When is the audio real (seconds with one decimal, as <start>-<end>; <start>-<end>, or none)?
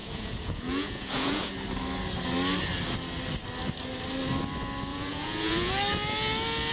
1.5-4.9; 5.7-6.7